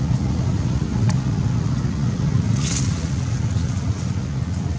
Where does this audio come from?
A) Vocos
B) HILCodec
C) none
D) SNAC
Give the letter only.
A